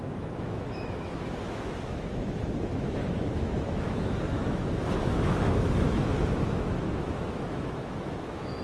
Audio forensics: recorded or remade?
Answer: remade